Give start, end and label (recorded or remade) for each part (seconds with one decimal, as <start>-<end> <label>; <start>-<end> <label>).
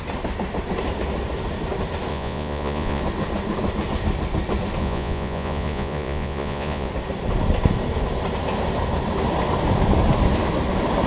0.0-2.1 recorded; 2.1-3.0 remade; 3.0-4.8 recorded; 4.8-6.9 remade; 6.9-11.1 recorded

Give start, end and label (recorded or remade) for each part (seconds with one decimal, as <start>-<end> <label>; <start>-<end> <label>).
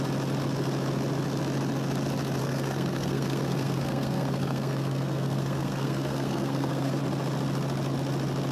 0.0-2.4 recorded; 2.4-7.0 remade; 7.0-8.5 recorded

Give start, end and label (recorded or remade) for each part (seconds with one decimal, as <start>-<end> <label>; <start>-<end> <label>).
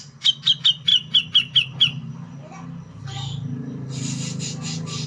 0.0-5.1 recorded